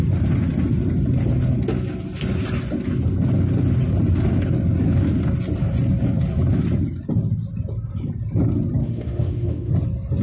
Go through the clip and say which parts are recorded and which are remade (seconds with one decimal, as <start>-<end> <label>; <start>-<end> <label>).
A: 0.0-8.8 recorded; 8.8-9.7 remade; 9.7-10.2 recorded